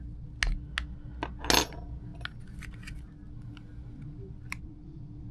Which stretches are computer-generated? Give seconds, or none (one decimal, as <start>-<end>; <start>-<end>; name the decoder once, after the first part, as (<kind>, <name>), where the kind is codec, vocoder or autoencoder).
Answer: none